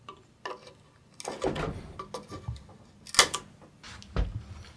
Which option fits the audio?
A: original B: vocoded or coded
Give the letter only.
A